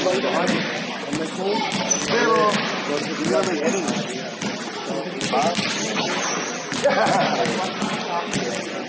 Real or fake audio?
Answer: real